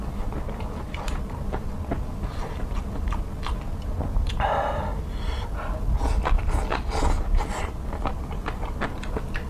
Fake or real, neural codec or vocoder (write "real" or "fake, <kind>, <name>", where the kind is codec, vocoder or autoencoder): real